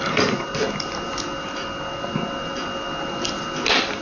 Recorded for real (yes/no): yes